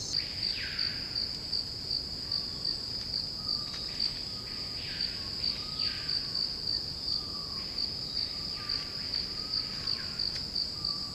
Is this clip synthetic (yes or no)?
no